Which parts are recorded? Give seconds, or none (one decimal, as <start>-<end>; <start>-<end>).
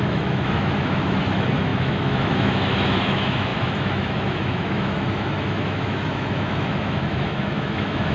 none